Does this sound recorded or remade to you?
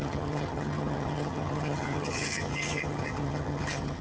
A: remade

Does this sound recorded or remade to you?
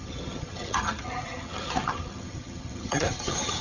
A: remade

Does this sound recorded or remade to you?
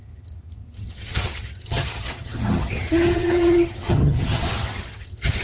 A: remade